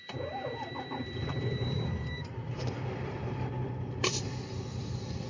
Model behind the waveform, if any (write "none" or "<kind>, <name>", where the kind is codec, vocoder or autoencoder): vocoder, BigVGAN v2